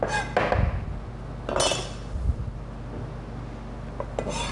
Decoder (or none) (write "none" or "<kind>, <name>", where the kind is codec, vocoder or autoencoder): none